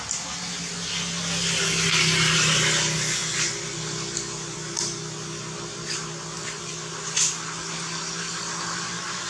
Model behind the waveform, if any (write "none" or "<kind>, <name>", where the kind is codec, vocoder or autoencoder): none